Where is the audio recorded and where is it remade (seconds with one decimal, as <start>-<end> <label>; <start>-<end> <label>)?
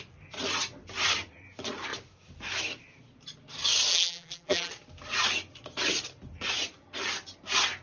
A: 0.0-3.9 recorded; 3.9-4.7 remade; 4.7-7.8 recorded